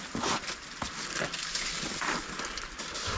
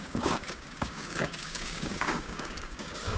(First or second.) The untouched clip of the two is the first